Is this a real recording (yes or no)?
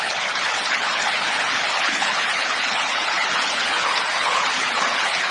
no